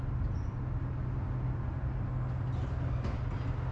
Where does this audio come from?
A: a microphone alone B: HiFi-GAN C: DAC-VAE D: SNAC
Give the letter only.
A